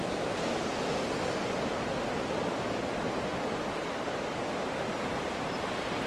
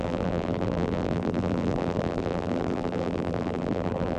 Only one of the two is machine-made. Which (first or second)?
second